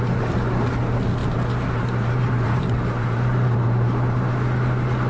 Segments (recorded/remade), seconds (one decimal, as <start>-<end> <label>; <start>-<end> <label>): 0.0-1.2 recorded; 1.2-4.3 remade; 4.3-5.1 recorded